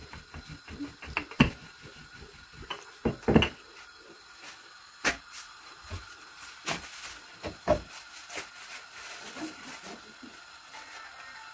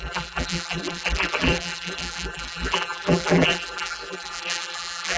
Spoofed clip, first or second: second